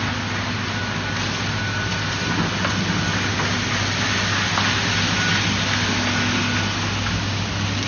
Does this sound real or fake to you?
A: real